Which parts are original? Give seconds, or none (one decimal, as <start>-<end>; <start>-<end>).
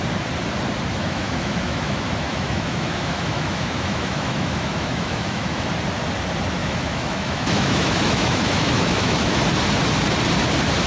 0.0-0.9; 5.7-6.6; 9.4-10.9